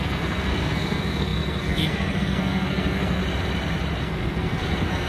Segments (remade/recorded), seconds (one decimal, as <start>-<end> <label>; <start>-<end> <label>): 0.0-3.2 remade; 3.2-4.0 recorded; 4.0-5.1 remade